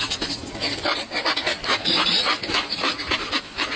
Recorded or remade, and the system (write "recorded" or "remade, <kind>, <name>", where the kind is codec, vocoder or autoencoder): recorded